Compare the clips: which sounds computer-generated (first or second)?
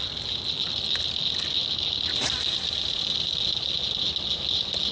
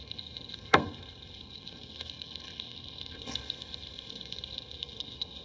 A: second